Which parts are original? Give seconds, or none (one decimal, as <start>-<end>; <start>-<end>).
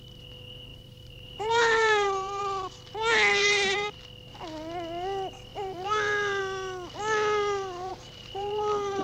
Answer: 0.0-0.7; 2.4-3.3; 4.0-5.5; 6.4-7.9